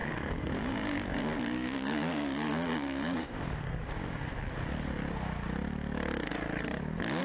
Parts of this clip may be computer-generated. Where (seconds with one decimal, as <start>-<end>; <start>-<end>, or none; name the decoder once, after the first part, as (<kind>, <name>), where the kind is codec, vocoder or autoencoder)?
0.0-4.3 (codec, DAC)